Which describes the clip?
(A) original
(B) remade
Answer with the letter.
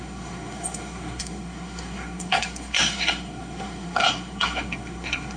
B